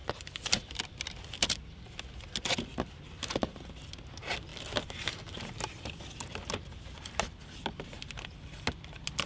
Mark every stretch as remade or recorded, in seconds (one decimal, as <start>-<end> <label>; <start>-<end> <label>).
0.0-1.0 remade; 1.0-4.5 recorded; 4.5-6.3 remade; 6.3-9.3 recorded